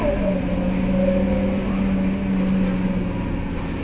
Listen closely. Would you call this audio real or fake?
real